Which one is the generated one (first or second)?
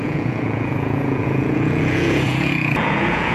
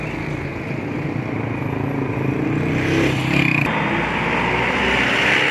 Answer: first